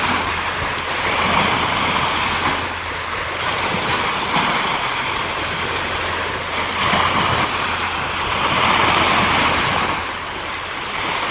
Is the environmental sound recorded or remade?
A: recorded